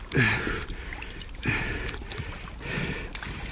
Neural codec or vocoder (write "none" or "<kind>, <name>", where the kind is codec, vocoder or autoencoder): none